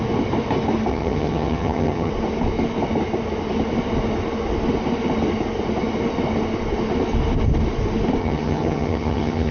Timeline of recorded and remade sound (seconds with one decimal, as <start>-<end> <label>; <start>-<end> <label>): 0.0-0.9 recorded; 0.9-2.1 remade; 2.1-8.2 recorded; 8.2-9.5 remade